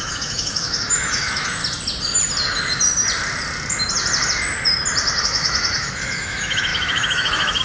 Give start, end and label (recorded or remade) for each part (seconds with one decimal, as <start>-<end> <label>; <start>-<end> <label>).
0.0-1.6 remade; 1.6-5.2 recorded; 5.2-7.6 remade